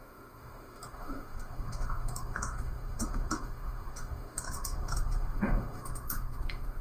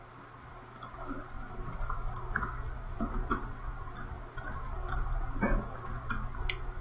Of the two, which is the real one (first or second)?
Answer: second